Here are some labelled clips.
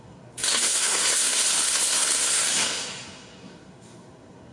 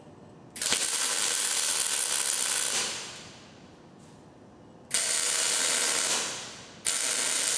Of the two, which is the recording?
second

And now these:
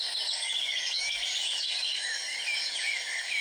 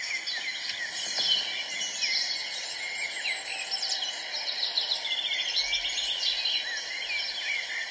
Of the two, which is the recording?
second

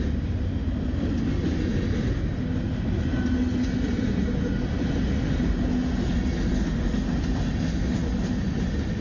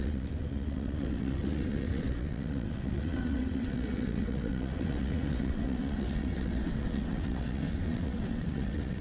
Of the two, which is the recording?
first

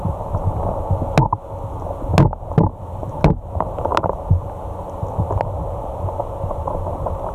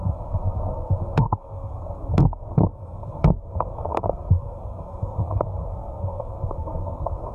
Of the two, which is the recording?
first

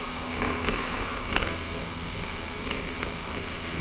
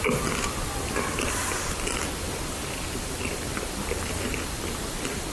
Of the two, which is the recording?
second